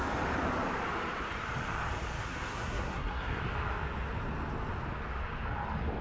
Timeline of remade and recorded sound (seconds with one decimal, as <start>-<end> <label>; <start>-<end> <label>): 0.0-2.2 recorded; 2.2-3.4 remade; 3.4-6.0 recorded